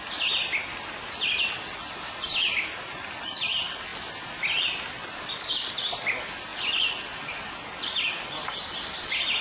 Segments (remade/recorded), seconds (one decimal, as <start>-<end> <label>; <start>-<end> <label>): 0.0-9.4 recorded